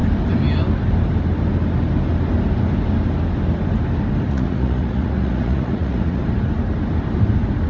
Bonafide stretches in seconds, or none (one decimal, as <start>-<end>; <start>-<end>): 0.0-4.3; 6.2-7.7